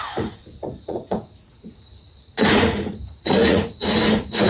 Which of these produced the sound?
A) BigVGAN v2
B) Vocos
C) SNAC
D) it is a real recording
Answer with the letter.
B